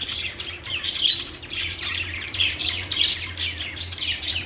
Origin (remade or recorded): remade